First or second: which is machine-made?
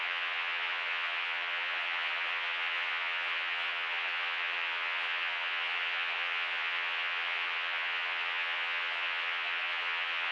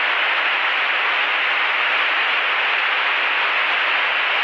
first